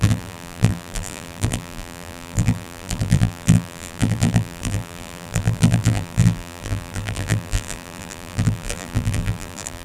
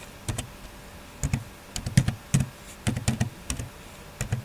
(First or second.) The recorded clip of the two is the second